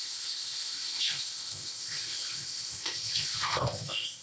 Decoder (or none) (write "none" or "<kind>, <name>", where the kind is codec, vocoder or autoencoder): codec, ZipCodec